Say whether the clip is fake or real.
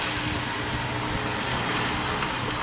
real